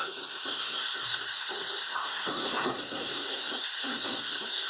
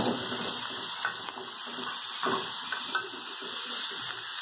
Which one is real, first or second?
second